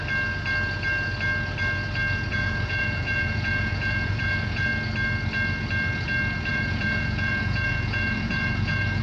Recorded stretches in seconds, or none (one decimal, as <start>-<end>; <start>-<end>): 0.0-2.3; 4.7-6.5